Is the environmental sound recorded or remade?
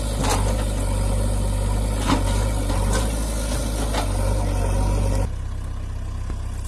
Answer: recorded